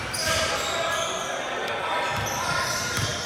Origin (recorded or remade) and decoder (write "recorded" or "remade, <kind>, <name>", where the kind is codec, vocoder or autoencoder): recorded